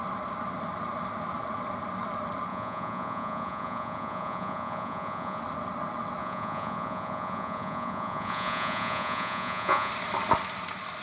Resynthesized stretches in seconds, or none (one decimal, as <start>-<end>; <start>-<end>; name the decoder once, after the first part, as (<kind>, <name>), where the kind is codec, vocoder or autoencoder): 2.5-5.4 (vocoder, Vocos); 6.2-9.9

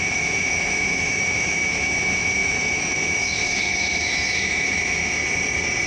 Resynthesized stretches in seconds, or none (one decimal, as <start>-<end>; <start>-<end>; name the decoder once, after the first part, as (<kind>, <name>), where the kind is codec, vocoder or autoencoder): 0.0-5.2 (autoencoder, DAC-VAE)

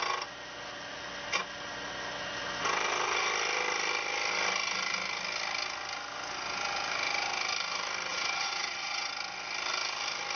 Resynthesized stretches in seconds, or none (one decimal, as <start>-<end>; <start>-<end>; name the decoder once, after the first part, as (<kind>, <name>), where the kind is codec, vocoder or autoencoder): 8.1-9.1 (vocoder, Vocos)

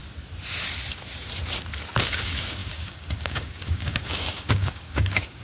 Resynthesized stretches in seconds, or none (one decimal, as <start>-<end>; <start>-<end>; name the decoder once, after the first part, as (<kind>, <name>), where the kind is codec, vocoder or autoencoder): 2.0-5.4 (codec, DAC)

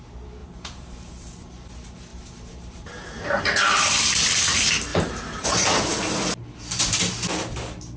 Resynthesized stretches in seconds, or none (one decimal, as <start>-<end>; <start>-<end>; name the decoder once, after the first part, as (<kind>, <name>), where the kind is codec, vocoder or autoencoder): 0.4-1.7 (vocoder, BigVGAN v2); 2.1-3.4; 4.9-5.8

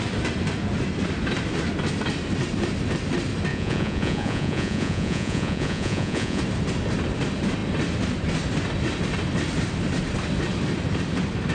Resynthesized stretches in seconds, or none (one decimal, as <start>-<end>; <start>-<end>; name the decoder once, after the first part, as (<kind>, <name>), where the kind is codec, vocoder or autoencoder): 3.5-6.4 (vocoder, Vocos)